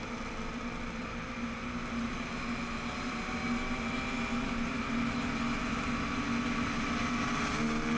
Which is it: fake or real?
real